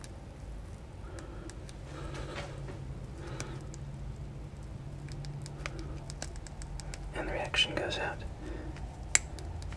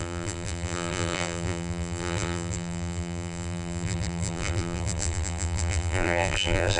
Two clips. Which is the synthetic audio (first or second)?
second